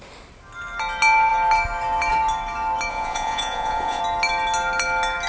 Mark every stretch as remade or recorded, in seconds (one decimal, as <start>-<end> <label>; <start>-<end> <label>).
0.0-2.9 recorded; 2.9-4.0 remade; 4.0-5.3 recorded